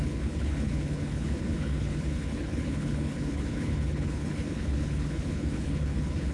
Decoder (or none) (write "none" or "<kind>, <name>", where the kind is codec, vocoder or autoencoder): codec, HILCodec